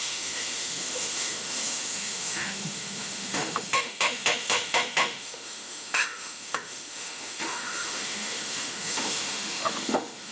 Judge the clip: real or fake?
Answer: fake